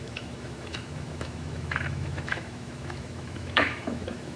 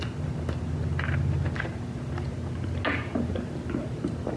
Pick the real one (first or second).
second